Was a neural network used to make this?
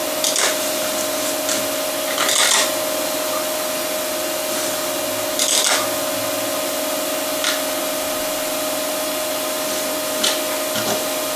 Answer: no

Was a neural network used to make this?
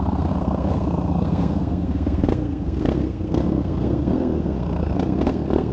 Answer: yes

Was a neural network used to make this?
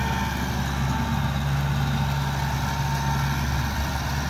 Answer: no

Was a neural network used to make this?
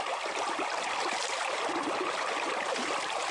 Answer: no